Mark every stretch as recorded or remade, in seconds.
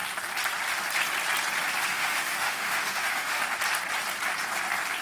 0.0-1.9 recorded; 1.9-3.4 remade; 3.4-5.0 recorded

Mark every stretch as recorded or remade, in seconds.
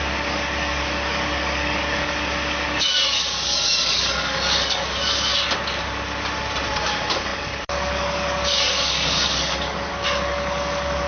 0.0-5.3 remade; 5.3-6.8 recorded; 6.8-11.1 remade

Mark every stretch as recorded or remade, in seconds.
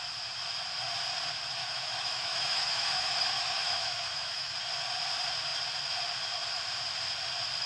0.0-1.6 recorded; 1.6-4.5 remade; 4.5-7.7 recorded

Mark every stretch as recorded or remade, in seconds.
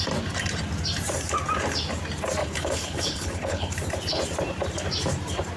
0.0-2.4 recorded; 2.4-3.7 remade; 3.7-5.6 recorded